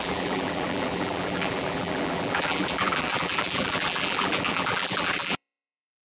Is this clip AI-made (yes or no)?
yes